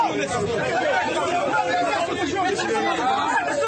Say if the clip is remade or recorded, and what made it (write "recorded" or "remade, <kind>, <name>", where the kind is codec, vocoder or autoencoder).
recorded